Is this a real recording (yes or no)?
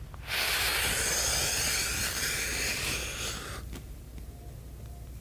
yes